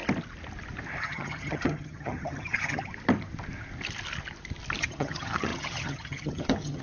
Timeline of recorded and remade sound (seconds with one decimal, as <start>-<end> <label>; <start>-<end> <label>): 0.0-1.0 recorded; 1.0-2.9 remade; 2.9-4.8 recorded; 4.8-6.8 remade